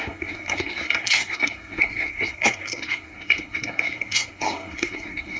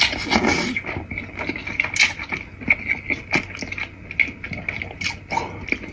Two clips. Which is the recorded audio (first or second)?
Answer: second